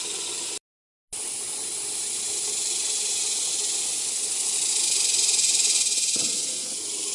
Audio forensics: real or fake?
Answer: real